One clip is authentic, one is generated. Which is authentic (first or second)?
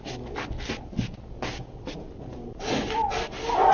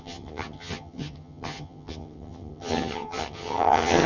first